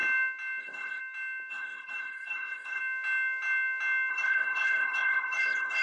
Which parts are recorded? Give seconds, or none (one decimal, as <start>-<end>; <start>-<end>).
0.0-0.6; 1.0-1.5; 2.8-4.1